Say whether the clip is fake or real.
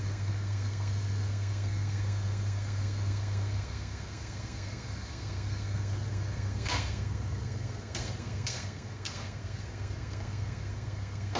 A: fake